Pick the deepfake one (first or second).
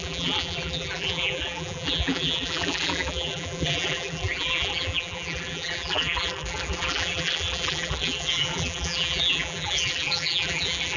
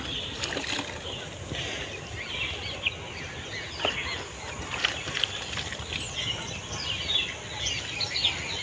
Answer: first